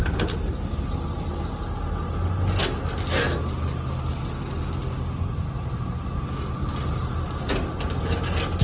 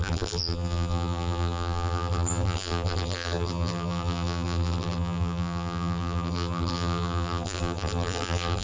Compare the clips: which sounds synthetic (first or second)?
second